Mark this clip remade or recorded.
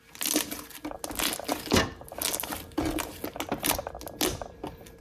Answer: recorded